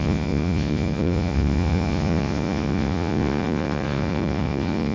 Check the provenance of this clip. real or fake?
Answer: fake